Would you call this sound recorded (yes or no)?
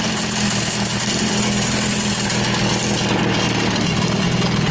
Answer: yes